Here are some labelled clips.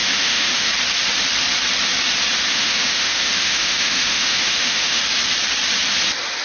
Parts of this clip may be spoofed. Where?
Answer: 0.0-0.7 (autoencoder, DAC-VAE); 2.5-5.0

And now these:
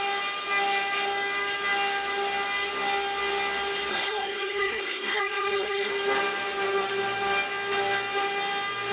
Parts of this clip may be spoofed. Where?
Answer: 3.9-5.9 (codec, SNAC)

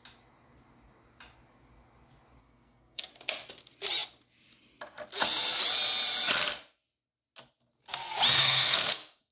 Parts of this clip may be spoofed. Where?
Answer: 2.4-3.1 (codec, SNAC); 8.4-9.3

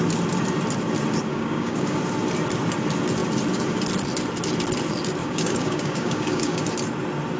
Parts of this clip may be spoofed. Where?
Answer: 1.3-2.0 (codec, DAC); 5.2-6.6

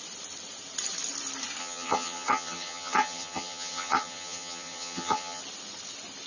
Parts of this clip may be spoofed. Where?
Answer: 1.6-5.4 (vocoder, HiFi-GAN)